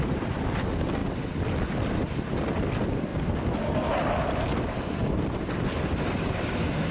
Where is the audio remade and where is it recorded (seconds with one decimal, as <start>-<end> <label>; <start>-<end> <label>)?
0.0-5.9 recorded; 5.9-6.9 remade